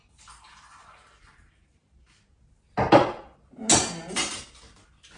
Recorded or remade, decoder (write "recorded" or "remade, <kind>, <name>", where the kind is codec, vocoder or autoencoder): recorded